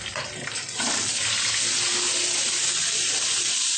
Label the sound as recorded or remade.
recorded